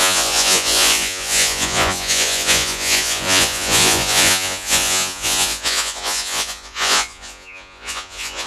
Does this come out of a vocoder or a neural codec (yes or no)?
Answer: yes